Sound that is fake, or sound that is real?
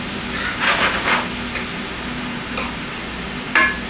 real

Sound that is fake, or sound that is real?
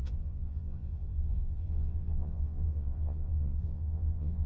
fake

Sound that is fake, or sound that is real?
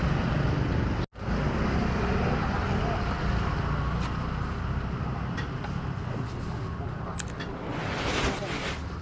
real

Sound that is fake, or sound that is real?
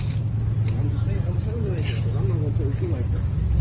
real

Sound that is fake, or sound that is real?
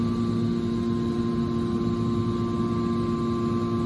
real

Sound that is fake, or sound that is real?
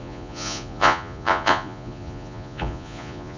fake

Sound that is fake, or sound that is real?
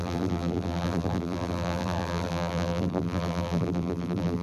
fake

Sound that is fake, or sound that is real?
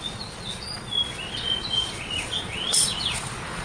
fake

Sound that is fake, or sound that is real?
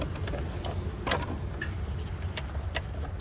real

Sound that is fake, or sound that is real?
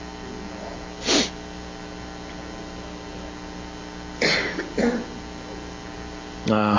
real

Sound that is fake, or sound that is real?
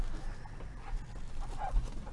real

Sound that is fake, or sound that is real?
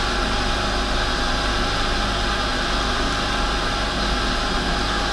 real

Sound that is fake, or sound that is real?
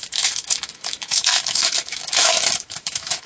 fake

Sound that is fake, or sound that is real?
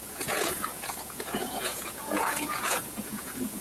fake